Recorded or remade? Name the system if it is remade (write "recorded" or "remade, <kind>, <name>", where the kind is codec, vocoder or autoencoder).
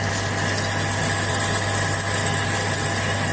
recorded